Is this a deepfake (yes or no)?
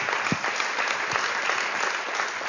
no